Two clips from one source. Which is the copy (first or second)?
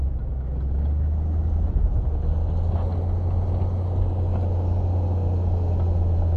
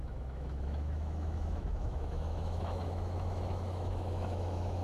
second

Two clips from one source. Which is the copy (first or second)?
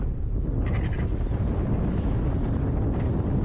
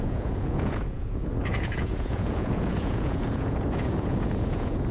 second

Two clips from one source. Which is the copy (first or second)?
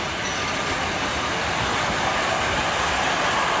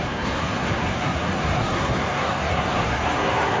second